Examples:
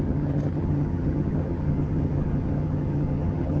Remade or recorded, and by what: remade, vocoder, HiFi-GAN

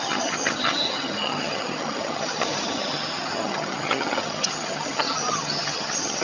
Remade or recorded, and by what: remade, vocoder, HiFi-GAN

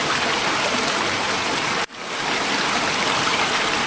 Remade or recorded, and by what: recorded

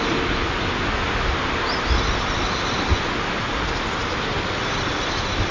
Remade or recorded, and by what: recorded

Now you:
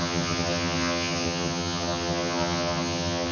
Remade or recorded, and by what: remade, vocoder, HiFi-GAN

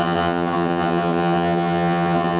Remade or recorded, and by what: remade, vocoder, HiFi-GAN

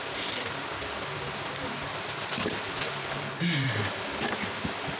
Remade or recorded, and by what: recorded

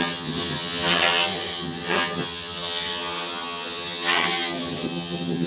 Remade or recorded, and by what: remade, vocoder, HiFi-GAN